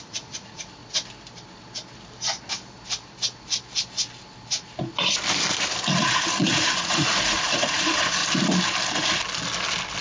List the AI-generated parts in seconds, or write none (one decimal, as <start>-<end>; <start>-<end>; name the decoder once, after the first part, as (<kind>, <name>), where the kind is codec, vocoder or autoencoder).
0.0-0.8 (vocoder, Vocos); 6.1-8.2